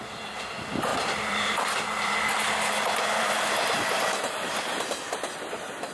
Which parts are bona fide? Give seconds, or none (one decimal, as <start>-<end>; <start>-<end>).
none